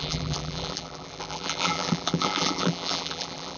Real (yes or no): no